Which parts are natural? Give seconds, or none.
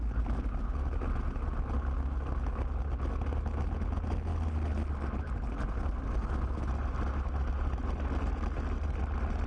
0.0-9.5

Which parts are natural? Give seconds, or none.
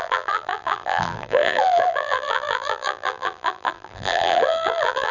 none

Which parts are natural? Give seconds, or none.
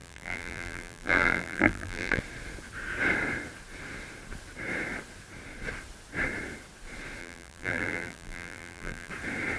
2.2-7.2; 9.1-9.6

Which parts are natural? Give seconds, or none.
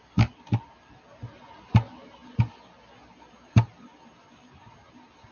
0.0-5.3